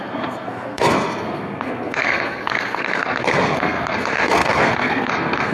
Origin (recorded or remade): remade